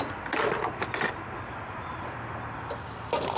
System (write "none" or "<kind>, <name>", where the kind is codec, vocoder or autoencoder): none